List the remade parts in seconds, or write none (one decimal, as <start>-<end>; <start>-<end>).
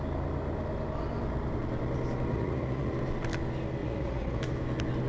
2.3-2.9; 3.8-4.4